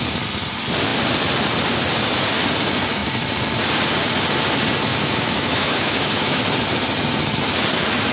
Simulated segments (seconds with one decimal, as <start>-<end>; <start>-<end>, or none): 4.9-6.4